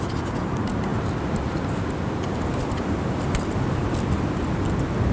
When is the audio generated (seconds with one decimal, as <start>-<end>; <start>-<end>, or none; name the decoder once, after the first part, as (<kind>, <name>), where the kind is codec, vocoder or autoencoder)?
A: none